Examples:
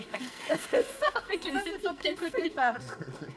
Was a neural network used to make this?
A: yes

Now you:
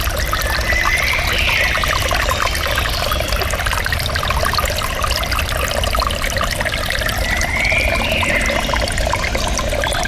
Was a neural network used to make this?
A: no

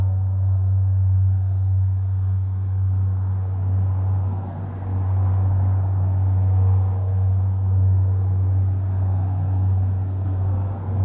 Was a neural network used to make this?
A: yes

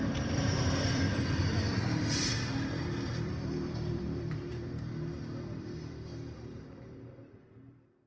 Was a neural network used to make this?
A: yes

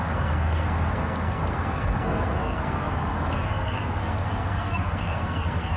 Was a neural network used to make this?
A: yes